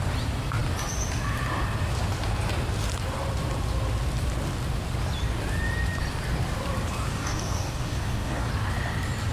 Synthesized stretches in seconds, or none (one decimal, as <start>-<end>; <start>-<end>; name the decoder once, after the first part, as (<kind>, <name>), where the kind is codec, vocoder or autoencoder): 7.1-8.5 (codec, DAC)